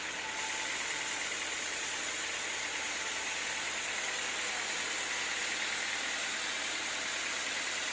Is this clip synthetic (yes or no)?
no